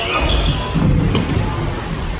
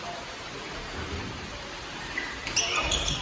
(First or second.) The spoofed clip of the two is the second